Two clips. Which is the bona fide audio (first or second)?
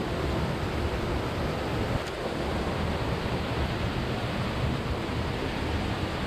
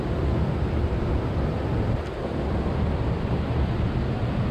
second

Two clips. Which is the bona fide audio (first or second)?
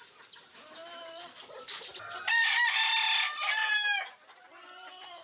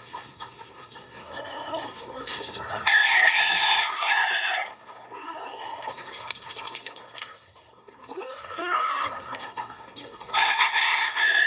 first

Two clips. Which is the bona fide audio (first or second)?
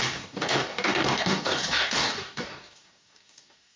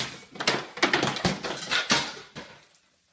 second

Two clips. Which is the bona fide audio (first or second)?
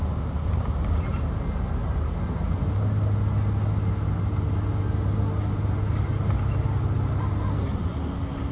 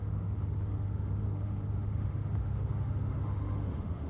first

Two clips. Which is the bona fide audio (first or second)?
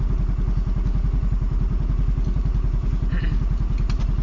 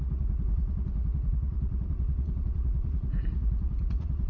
first